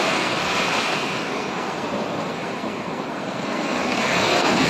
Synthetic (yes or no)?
yes